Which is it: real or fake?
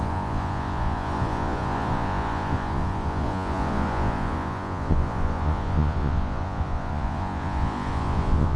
fake